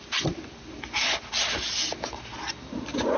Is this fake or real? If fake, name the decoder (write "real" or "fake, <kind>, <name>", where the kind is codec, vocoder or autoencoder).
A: real